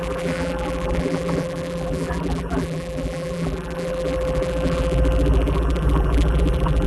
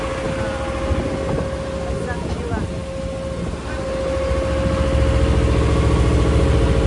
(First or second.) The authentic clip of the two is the second